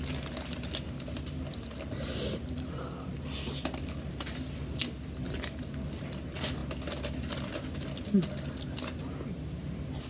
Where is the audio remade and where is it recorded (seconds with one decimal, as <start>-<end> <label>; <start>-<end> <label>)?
0.0-10.1 recorded

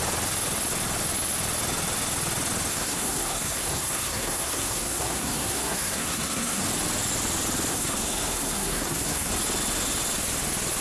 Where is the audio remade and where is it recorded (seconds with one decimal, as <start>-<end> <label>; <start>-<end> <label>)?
0.0-2.7 recorded; 2.7-6.6 remade; 6.6-7.7 recorded; 7.7-9.3 remade; 9.3-10.8 recorded

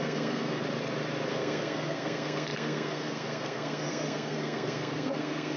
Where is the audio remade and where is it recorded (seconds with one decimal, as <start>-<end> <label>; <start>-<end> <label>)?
0.0-0.6 remade; 0.6-1.3 recorded; 1.3-5.6 remade